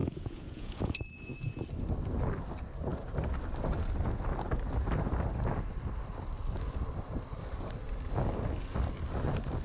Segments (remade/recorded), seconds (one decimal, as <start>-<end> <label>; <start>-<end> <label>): 0.0-1.6 remade; 1.6-9.6 recorded